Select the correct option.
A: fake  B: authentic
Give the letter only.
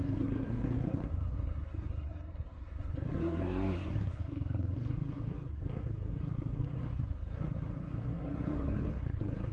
A